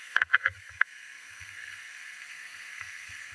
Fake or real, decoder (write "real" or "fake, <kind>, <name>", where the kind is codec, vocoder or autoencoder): fake, codec, SNAC